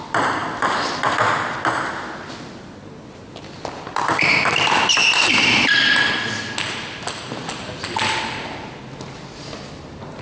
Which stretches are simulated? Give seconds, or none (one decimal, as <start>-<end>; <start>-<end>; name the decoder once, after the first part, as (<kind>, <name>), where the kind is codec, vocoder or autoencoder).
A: none